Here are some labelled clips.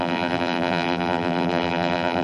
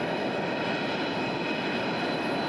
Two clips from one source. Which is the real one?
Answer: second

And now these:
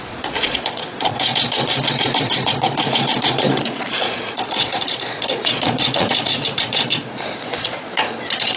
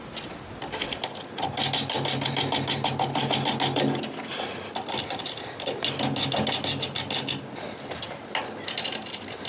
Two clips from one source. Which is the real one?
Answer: second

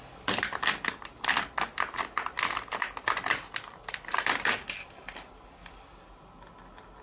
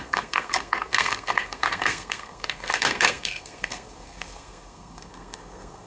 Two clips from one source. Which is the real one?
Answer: first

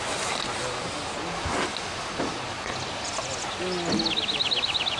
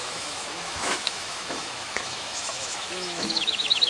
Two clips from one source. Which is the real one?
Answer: first